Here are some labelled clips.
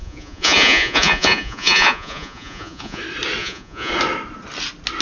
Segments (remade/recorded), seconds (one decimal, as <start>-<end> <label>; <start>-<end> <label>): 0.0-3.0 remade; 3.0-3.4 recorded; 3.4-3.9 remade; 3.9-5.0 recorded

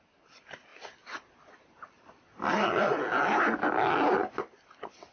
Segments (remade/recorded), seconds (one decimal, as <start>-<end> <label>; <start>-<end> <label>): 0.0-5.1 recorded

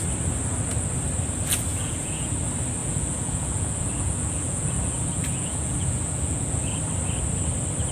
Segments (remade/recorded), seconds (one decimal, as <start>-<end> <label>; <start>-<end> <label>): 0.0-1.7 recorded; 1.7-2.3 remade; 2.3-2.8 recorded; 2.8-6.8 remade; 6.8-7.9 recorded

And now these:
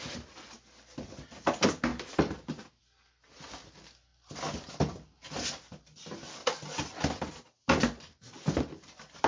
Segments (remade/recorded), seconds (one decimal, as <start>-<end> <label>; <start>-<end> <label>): 0.0-9.3 recorded